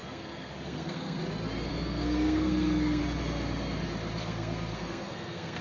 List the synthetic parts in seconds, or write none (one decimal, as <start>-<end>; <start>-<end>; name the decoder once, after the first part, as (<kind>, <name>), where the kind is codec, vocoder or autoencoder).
0.0-1.2 (codec, SNAC); 1.7-3.0; 4.2-5.6